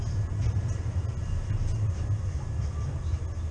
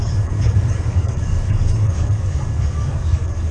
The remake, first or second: second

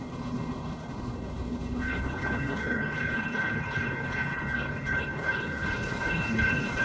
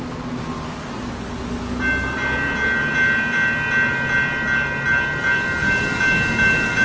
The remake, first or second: first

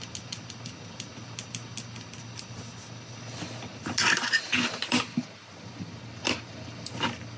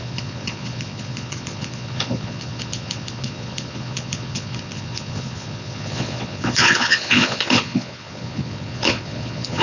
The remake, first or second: second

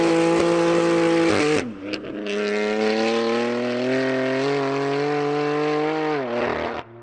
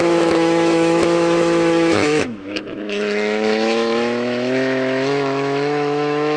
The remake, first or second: second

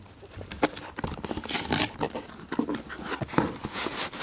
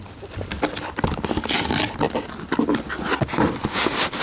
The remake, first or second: first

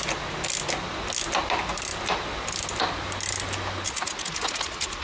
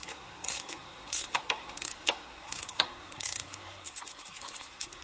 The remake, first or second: second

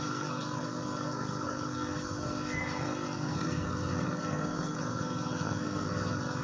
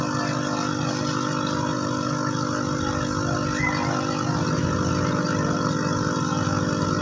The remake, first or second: first